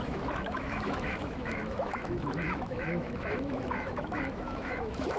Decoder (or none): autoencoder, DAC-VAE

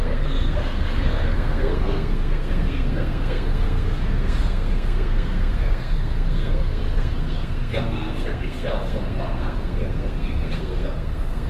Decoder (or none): codec, SNAC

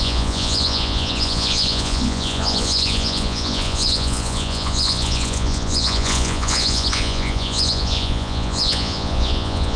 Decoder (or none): vocoder, Vocos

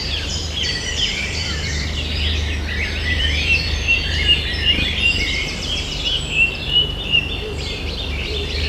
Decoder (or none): vocoder, BigVGAN v2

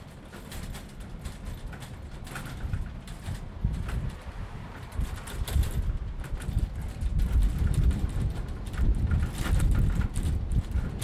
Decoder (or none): none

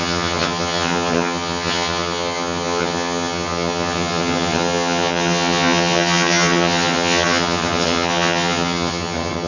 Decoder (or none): vocoder, HiFi-GAN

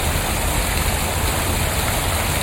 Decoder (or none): none